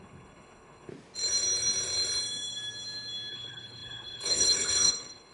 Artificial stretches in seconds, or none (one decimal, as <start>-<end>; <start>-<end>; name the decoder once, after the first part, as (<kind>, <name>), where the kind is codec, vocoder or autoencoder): 0.0-0.9 (codec, HILCodec); 3.3-5.3